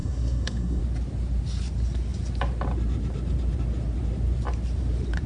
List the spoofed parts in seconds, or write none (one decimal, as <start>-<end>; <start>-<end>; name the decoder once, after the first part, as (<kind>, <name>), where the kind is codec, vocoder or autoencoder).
0.0-0.8 (codec, SNAC)